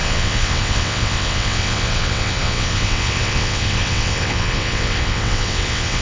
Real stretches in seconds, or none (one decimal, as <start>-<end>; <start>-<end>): none